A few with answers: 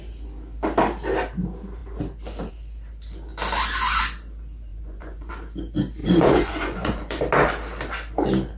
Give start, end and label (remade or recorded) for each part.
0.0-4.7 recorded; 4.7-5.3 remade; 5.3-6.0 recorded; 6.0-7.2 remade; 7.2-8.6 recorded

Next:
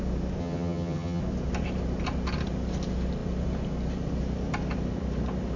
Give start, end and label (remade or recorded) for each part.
0.0-0.4 recorded; 0.4-1.2 remade; 1.2-5.6 recorded

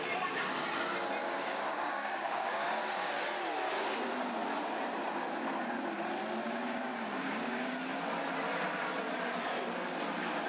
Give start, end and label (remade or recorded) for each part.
0.0-1.2 recorded; 1.2-3.1 remade; 3.1-6.9 recorded; 6.9-7.7 remade; 7.7-10.5 recorded

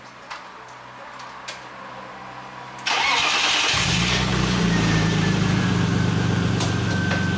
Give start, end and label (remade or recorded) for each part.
0.0-4.3 recorded; 4.3-6.9 remade; 6.9-7.4 recorded